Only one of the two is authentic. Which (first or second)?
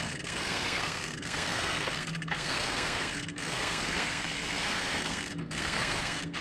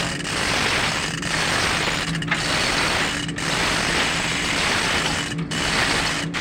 second